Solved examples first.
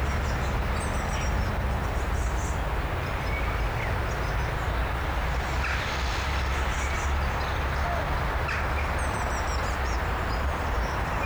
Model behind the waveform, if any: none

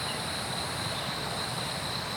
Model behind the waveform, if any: none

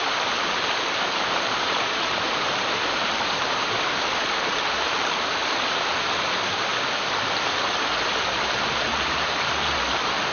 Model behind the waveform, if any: vocoder, BigVGAN v2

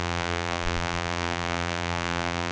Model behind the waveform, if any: vocoder, BigVGAN v2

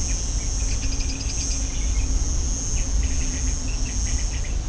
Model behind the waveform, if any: none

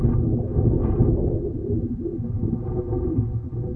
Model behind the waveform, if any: none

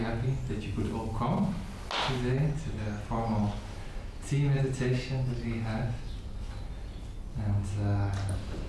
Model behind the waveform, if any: none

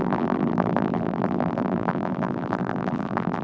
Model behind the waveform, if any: vocoder, BigVGAN v2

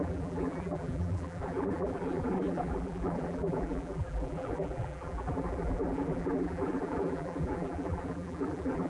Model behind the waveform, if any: vocoder, BigVGAN v2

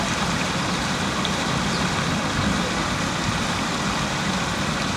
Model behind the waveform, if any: none